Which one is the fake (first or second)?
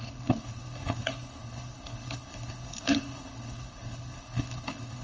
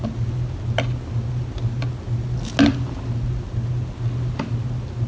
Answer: first